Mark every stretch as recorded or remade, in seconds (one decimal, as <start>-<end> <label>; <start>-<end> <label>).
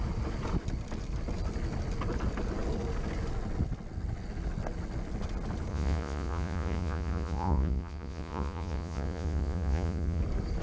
0.0-5.7 recorded; 5.7-10.2 remade; 10.2-10.6 recorded